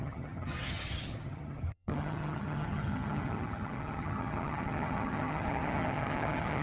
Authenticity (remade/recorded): remade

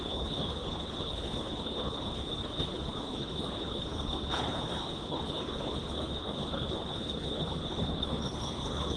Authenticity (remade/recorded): remade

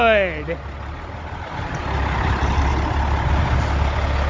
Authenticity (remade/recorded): recorded